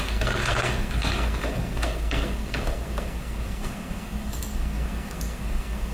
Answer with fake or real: fake